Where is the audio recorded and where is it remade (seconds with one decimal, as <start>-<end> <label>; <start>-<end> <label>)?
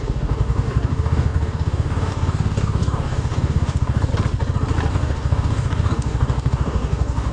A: 0.0-4.1 remade; 4.1-4.9 recorded; 4.9-7.3 remade